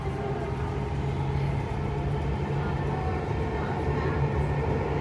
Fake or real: real